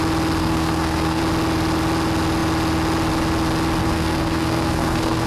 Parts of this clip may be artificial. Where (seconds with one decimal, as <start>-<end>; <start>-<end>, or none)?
0.4-1.2; 3.8-5.3